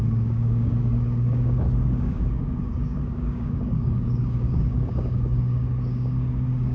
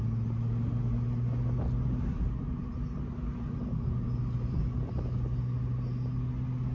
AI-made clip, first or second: first